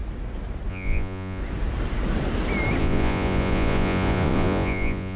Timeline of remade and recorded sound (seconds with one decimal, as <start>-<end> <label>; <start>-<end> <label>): 0.0-0.7 recorded; 0.7-1.4 remade; 1.4-2.8 recorded; 2.8-5.2 remade